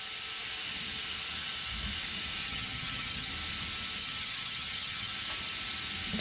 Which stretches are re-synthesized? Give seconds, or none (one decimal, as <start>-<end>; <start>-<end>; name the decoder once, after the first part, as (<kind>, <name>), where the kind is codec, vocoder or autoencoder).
2.4-3.3 (vocoder, HiFi-GAN); 4.0-5.1